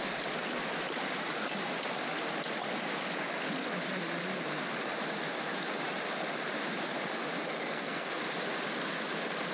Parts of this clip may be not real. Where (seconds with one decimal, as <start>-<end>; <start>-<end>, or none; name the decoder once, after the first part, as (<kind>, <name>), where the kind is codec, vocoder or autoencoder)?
7.6-8.2 (codec, SNAC)

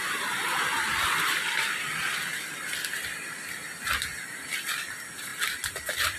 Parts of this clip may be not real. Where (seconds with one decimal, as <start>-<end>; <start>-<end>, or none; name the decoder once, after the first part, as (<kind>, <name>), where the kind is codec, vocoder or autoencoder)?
0.0-0.9 (vocoder, BigVGAN v2); 4.6-6.2